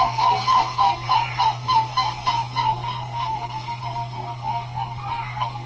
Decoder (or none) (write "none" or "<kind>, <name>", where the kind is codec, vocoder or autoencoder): codec, SNAC